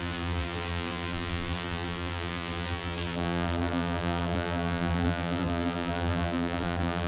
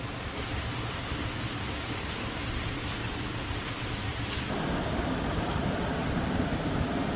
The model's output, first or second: first